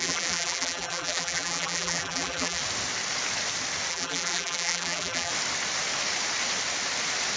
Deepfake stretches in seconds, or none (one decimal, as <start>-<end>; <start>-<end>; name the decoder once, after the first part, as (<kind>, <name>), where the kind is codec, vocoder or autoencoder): 0.0-2.6 (vocoder, BigVGAN v2); 3.9-5.3